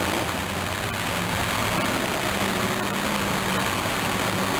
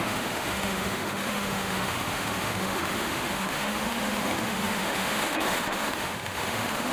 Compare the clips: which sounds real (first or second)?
first